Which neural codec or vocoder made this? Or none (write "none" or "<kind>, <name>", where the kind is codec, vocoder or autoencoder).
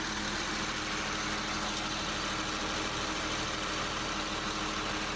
none